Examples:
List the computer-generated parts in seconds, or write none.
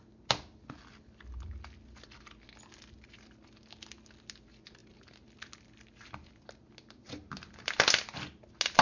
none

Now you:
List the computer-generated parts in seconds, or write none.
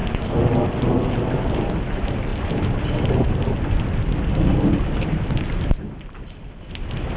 none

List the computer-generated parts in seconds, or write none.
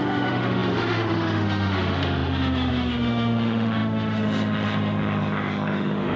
0.0-6.2 (autoencoder, DAC-VAE)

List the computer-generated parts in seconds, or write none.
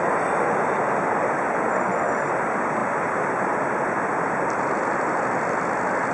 1.7-2.3 (autoencoder, DAC-VAE)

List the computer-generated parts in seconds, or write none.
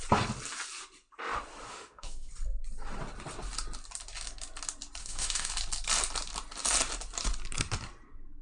1.7-2.3 (autoencoder, DAC-VAE); 5.0-5.5